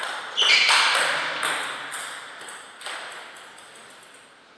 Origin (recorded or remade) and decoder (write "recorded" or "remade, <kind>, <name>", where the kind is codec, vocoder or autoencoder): recorded